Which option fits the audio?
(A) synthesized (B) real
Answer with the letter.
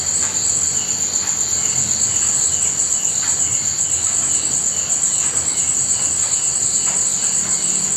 B